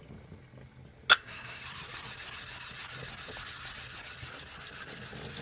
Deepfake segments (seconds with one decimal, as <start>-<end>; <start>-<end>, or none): 1.1-1.6